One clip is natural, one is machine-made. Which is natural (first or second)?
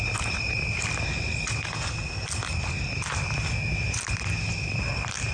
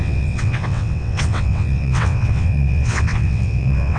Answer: first